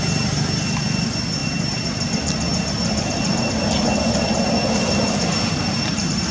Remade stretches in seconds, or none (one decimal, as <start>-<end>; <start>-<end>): none